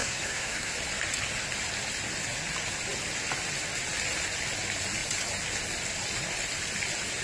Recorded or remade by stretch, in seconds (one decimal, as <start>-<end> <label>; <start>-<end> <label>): 0.0-0.7 remade; 0.7-7.2 recorded